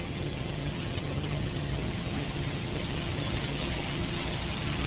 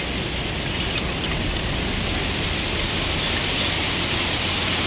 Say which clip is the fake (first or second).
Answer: first